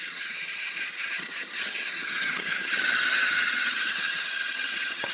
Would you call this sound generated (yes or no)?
yes